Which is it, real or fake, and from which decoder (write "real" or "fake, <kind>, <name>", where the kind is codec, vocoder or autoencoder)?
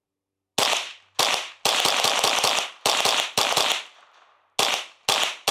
real